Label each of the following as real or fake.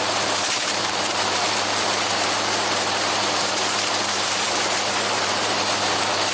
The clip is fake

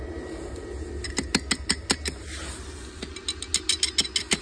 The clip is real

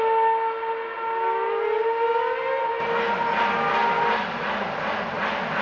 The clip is real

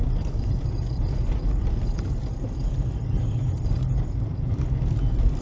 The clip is real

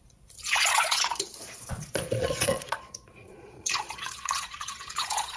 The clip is fake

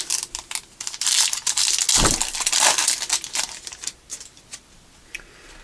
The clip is real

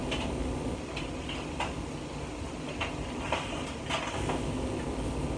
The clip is real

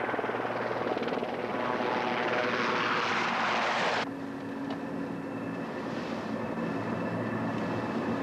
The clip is real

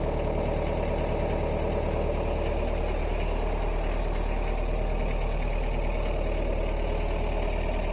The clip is real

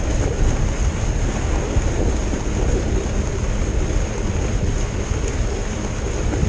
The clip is real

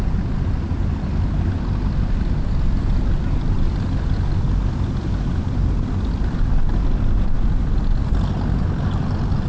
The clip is real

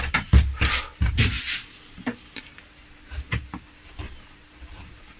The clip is fake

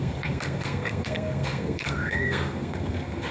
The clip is fake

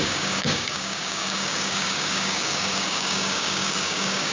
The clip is fake